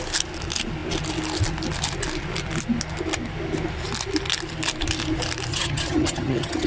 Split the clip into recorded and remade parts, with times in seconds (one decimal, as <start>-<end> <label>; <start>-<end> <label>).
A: 0.0-5.5 recorded; 5.5-6.7 remade